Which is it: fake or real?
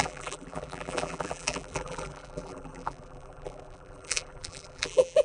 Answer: fake